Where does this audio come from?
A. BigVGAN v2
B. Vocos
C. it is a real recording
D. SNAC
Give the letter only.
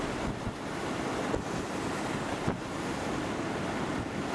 C